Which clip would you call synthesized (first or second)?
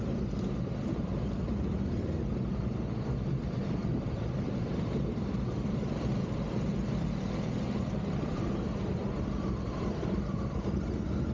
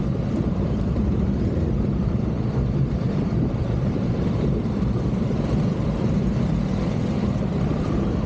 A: second